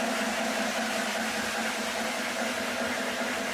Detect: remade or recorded recorded